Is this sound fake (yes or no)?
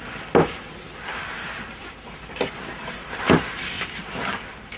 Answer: no